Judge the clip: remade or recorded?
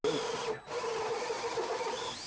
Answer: recorded